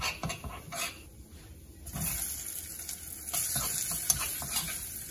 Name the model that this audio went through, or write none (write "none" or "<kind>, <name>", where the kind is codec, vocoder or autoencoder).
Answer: none